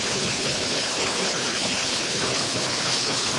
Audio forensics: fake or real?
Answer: fake